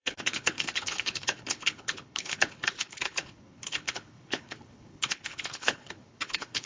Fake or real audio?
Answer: fake